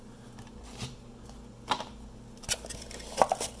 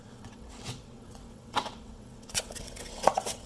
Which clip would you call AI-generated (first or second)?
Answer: second